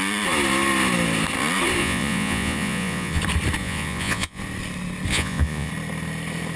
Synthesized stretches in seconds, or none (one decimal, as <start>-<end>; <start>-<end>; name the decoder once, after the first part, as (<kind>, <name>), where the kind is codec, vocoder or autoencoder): 1.8-3.2 (vocoder, Vocos); 3.6-4.4; 5.1-5.7